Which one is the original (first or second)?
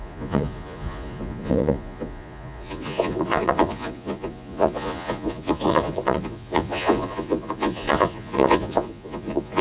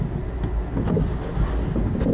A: second